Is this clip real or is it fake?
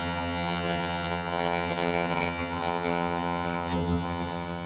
fake